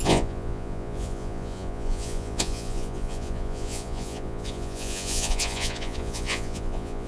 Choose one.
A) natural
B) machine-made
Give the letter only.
B